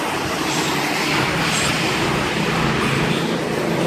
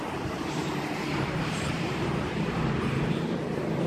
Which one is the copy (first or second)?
second